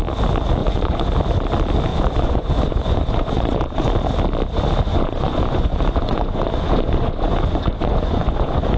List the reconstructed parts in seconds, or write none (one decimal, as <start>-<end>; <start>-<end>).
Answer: 0.6-1.1; 1.9-3.9; 4.9-8.8